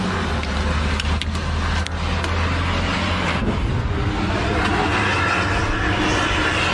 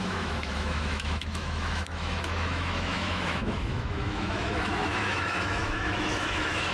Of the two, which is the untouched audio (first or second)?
first